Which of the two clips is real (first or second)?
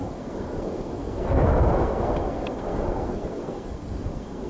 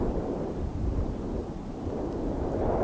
second